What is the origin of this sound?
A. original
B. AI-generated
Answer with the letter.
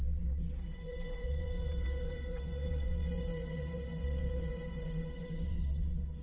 B